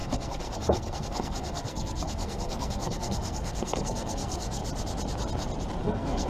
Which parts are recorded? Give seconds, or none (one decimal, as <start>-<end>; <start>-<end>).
4.6-5.8